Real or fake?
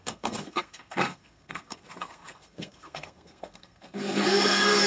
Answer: fake